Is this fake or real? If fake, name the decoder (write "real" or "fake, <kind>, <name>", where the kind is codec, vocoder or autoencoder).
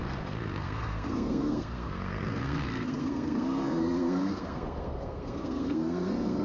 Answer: fake, codec, SNAC